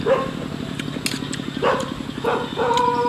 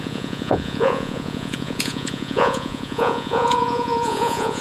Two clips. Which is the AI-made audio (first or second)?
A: second